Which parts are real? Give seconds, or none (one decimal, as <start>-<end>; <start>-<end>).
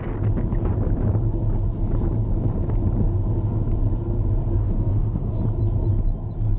0.0-4.6; 5.4-6.6